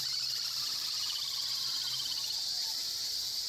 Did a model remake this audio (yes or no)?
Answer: yes